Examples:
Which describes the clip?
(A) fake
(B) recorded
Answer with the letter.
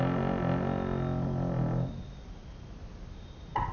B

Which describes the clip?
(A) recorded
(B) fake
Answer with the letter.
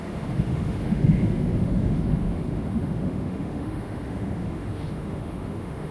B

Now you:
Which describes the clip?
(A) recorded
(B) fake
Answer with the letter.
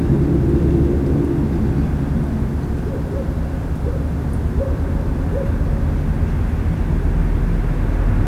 A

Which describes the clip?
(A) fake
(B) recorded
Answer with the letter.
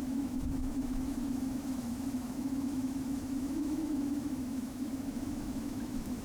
A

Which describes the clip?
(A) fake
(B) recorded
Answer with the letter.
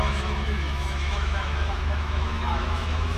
A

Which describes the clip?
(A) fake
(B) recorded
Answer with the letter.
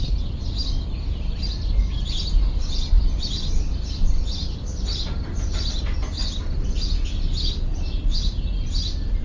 B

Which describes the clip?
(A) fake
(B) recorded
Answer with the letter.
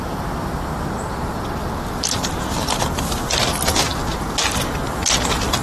B